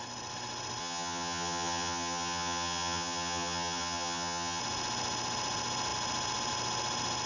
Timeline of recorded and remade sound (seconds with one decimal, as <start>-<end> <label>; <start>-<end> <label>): 0.0-0.8 recorded; 0.8-4.6 remade; 4.6-7.3 recorded